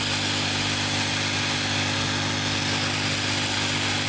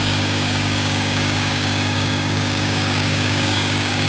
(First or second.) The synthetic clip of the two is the second